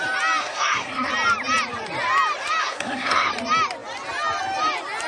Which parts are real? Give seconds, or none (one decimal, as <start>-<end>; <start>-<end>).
0.0-0.4; 1.1-2.6; 3.3-5.1